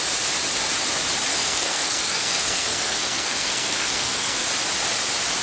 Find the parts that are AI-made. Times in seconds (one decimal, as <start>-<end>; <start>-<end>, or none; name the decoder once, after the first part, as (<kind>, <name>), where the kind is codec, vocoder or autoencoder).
1.3-4.5 (codec, SNAC)